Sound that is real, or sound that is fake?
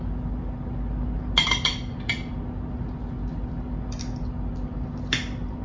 real